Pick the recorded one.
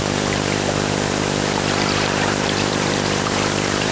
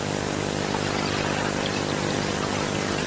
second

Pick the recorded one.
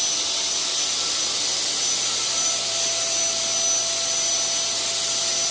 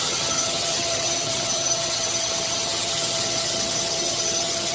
first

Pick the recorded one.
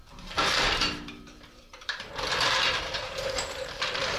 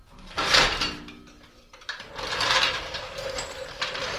second